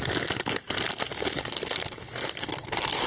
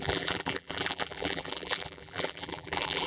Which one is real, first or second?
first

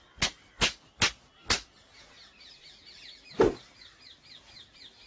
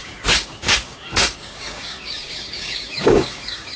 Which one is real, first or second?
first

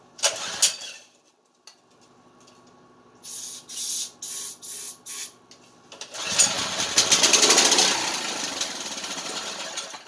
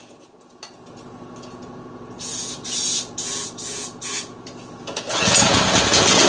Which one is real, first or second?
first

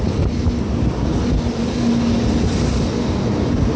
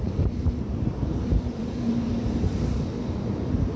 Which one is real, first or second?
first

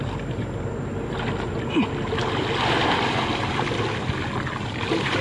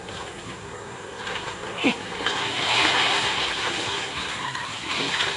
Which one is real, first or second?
first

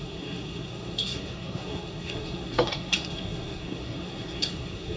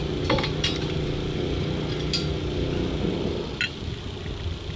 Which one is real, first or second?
second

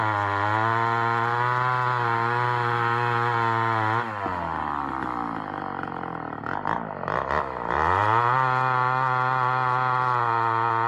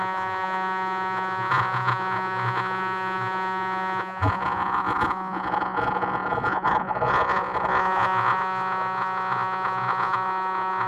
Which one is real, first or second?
first